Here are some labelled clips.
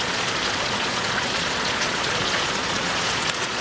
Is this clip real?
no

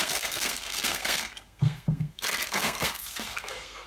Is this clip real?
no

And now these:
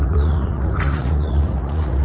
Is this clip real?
no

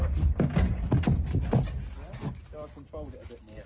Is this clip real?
yes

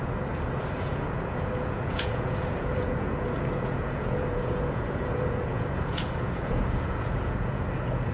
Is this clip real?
no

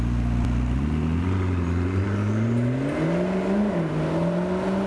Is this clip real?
yes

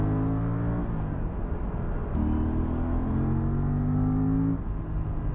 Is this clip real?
yes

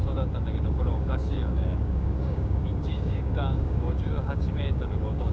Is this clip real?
no